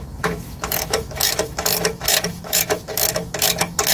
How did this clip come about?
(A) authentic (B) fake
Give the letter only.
B